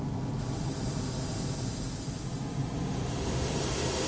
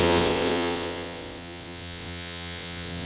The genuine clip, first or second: first